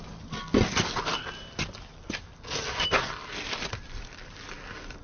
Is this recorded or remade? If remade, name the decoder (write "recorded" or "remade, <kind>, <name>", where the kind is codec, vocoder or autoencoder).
recorded